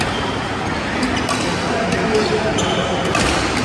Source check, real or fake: real